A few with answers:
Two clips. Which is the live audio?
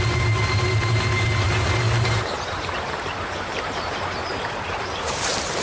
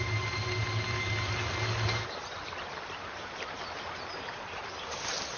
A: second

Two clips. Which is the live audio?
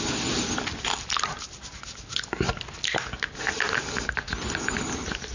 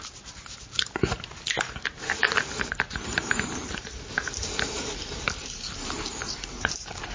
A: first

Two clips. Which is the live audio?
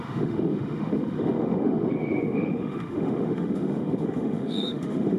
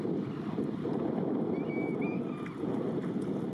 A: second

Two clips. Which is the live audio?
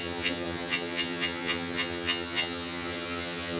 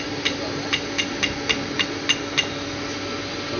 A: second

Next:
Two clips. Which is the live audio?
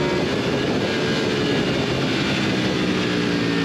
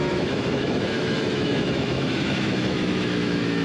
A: first